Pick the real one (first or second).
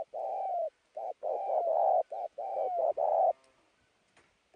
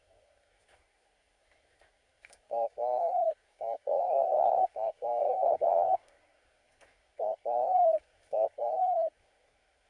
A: first